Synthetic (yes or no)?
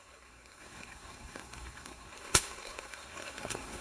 yes